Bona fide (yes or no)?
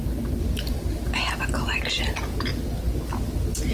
yes